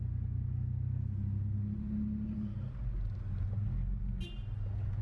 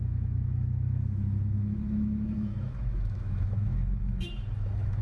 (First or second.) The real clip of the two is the first